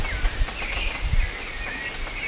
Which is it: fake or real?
real